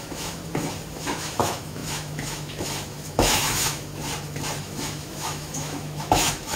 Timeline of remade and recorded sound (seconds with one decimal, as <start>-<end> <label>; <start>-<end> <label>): 0.0-0.4 remade; 0.4-0.9 recorded; 0.9-3.9 remade; 3.9-4.6 recorded; 4.6-6.6 remade